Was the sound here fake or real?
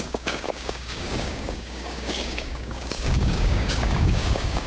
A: fake